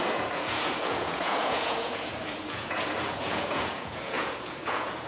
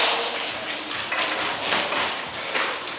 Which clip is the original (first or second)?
second